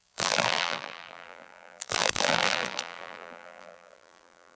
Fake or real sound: fake